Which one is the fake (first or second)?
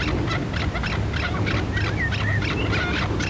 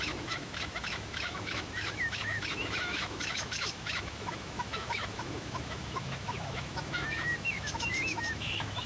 second